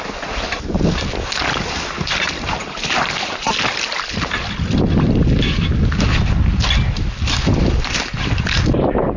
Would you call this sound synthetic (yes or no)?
no